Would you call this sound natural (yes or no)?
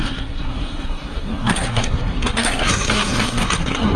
no